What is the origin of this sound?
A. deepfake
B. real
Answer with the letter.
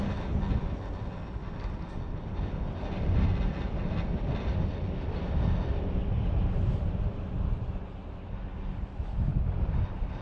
B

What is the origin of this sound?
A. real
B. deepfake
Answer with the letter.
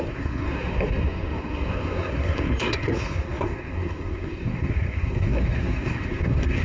B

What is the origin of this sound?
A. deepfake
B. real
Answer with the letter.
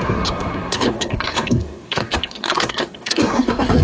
A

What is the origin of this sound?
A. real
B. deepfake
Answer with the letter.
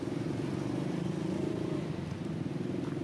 A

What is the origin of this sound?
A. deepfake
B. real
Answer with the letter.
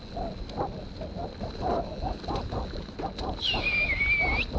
B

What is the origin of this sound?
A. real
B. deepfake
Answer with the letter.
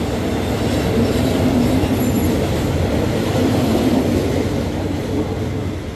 A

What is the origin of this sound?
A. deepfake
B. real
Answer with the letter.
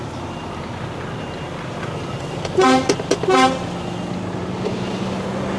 B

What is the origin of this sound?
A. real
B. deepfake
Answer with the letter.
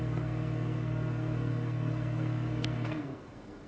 B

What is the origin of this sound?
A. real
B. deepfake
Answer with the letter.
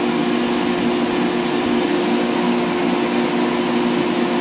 A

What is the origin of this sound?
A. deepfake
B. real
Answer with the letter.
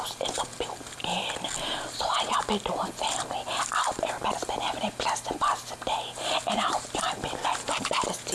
B